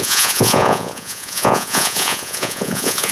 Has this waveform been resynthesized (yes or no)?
yes